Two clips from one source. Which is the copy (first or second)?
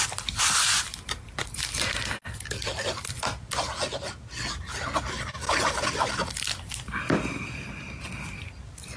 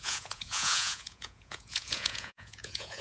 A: second